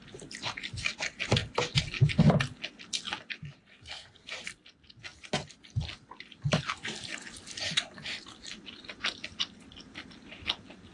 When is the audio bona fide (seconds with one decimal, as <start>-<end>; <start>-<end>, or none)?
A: 0.0-3.7; 4.3-10.9